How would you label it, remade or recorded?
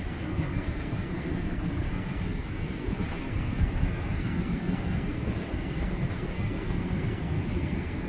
remade